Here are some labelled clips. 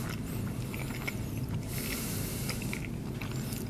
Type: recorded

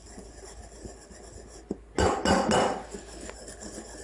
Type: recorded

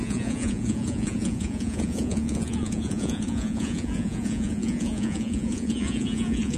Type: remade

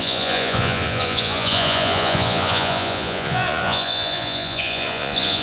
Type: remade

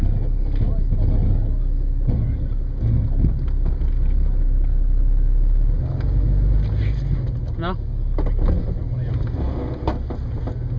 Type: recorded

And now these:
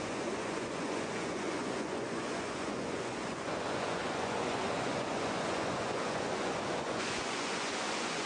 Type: remade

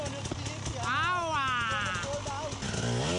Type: recorded